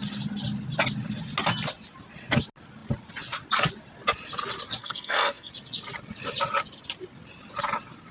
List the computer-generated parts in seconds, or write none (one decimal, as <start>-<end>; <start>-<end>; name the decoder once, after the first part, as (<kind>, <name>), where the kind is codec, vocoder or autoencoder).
4.8-5.5 (codec, SNAC)